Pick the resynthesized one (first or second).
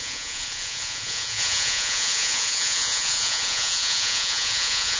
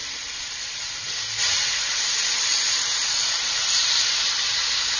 first